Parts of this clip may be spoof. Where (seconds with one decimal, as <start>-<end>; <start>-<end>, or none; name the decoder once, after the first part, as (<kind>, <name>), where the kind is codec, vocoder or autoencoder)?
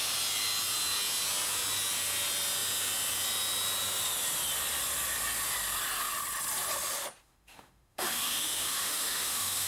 7.2-9.7 (autoencoder, DAC-VAE)